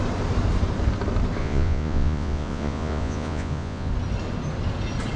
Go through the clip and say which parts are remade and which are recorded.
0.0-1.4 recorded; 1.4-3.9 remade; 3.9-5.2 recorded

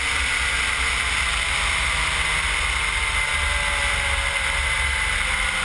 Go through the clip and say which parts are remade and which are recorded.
0.0-5.6 recorded

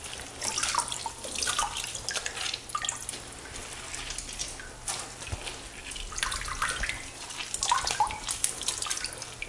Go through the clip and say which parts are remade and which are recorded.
0.0-9.5 recorded

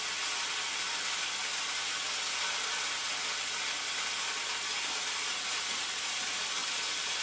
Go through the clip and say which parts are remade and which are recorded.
0.0-6.6 recorded; 6.6-7.2 remade